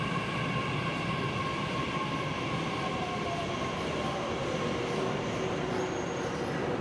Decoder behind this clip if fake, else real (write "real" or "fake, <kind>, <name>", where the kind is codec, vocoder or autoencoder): real